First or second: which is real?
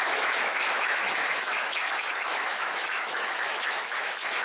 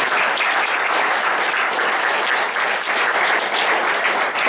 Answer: second